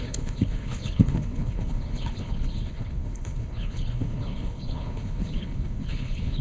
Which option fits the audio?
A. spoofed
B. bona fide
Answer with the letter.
A